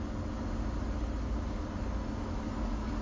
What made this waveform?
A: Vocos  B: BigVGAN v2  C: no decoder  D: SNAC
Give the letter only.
C